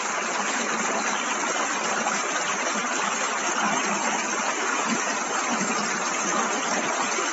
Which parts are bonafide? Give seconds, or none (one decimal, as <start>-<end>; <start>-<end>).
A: none